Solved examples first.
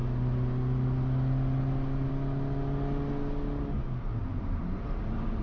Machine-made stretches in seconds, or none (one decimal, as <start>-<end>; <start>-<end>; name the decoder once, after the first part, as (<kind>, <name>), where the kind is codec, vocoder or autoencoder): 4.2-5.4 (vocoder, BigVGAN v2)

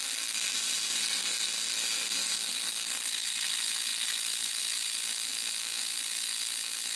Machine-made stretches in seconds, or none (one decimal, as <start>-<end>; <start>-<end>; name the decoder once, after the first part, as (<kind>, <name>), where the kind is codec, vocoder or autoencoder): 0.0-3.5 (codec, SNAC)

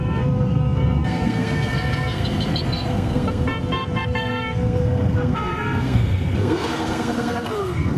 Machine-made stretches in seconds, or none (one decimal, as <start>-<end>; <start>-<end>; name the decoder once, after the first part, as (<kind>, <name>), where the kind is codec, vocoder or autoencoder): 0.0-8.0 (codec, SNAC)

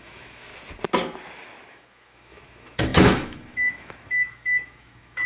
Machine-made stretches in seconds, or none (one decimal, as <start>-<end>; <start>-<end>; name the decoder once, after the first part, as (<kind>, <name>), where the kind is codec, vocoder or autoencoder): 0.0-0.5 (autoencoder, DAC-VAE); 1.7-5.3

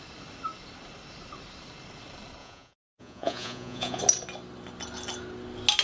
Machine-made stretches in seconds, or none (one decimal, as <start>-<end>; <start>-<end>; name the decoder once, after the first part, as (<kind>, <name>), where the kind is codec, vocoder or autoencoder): 2.4-4.0 (vocoder, Vocos)

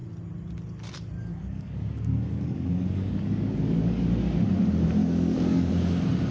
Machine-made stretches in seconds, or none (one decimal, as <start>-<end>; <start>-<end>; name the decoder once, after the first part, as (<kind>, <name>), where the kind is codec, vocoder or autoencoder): 1.3-4.1 (codec, DAC); 5.0-5.7